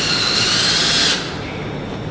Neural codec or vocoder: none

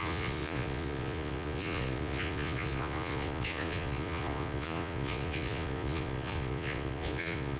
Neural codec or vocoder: vocoder, Vocos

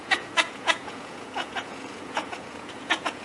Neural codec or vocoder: vocoder, Vocos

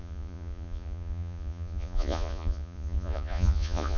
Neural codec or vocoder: vocoder, Vocos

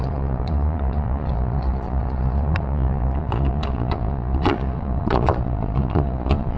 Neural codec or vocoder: vocoder, Vocos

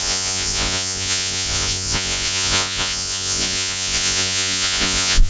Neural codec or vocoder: vocoder, Vocos